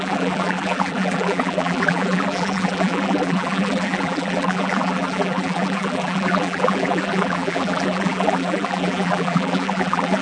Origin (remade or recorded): remade